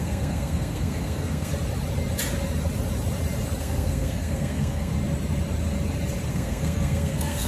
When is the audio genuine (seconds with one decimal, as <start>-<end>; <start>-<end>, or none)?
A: 1.5-3.6; 4.9-6.3